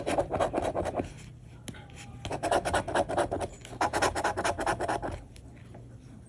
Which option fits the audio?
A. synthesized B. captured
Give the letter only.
B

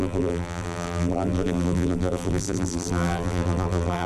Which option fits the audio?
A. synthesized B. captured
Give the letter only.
A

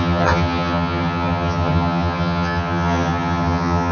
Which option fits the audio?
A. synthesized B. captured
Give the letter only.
A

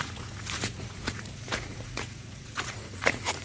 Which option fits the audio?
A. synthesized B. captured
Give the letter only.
A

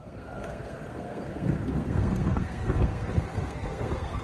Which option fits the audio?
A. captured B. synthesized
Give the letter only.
B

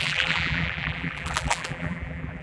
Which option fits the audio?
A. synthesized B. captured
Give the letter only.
A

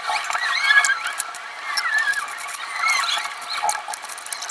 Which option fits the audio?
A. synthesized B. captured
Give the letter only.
B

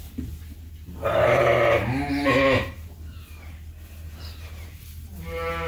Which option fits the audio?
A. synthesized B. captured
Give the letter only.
B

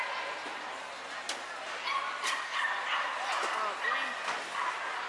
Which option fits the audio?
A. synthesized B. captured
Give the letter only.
B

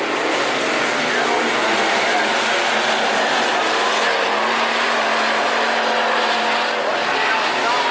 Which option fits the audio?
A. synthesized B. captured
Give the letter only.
B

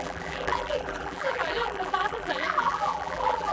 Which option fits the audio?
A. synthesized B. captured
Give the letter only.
A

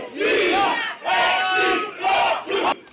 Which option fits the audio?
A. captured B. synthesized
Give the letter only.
A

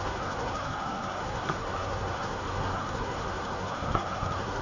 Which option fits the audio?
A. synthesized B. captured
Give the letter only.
A